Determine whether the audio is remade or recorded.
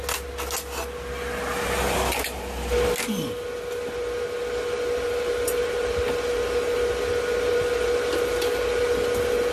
recorded